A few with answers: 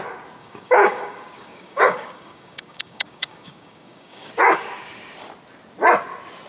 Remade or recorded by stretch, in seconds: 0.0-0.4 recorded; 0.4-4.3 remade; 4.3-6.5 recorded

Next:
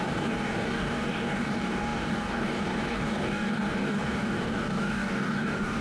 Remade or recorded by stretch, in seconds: 0.0-5.8 remade

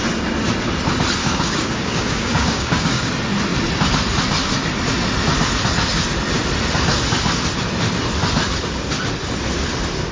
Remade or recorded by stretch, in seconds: 0.0-1.2 recorded; 1.2-3.1 remade; 3.1-10.1 recorded

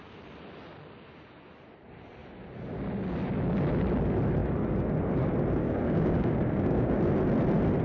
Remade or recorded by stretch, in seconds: 0.0-5.6 recorded; 5.6-7.0 remade; 7.0-7.8 recorded

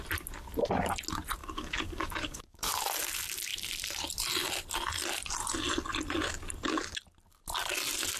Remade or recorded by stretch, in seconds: 0.0-1.4 recorded; 1.4-2.7 remade; 2.7-8.2 recorded

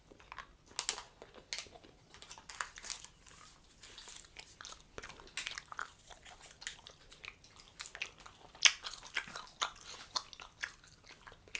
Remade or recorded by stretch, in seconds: 0.0-11.6 recorded